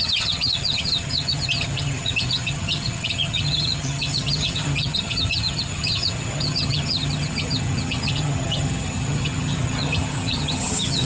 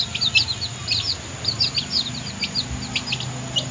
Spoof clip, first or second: first